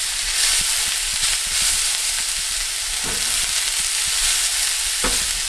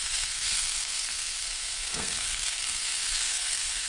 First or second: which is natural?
first